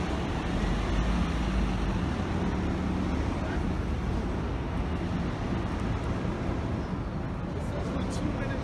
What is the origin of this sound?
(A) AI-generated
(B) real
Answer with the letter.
B